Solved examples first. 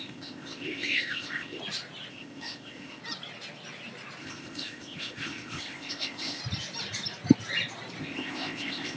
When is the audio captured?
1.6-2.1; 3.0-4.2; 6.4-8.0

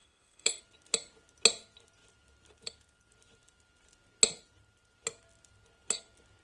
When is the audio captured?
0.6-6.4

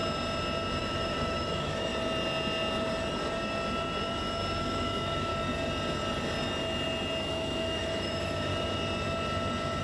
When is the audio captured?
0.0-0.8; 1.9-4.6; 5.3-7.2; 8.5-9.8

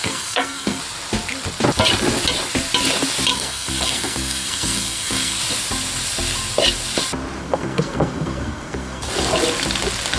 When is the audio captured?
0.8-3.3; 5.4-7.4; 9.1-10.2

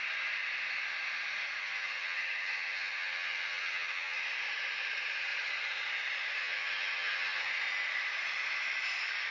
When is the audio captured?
0.0-1.6; 4.2-6.4; 7.5-9.3